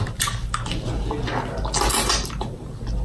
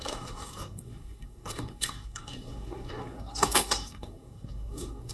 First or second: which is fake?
second